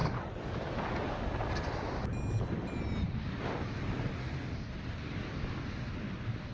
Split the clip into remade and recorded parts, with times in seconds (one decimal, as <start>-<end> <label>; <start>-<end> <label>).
0.0-6.5 recorded